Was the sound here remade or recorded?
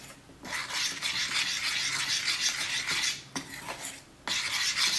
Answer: recorded